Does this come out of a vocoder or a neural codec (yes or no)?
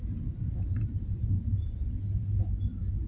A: no